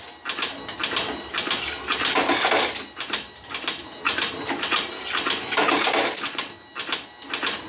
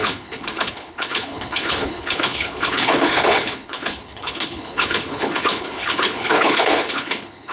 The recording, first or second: first